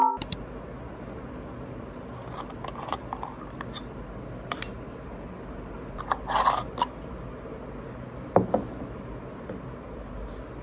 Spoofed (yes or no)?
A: no